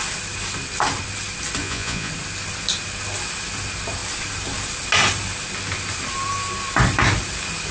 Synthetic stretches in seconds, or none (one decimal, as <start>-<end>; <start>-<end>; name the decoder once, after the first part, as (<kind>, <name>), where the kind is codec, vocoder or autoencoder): 1.6-2.1 (vocoder, Vocos)